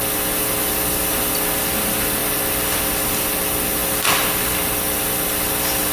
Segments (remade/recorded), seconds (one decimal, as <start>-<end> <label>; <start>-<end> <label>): 0.0-5.9 recorded